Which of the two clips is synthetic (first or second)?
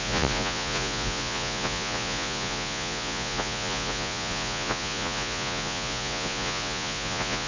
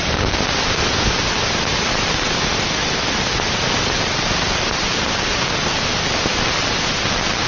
first